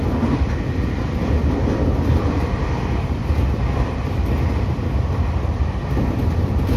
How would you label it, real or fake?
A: fake